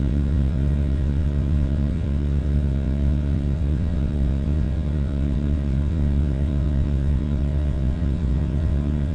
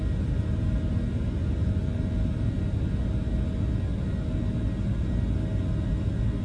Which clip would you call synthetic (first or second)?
first